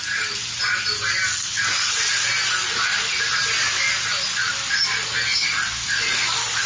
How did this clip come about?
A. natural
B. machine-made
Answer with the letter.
A